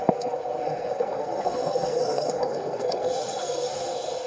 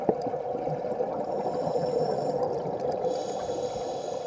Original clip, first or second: second